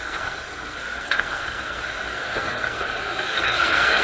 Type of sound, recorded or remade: remade